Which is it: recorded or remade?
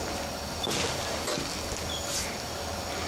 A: recorded